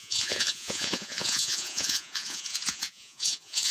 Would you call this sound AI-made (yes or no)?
yes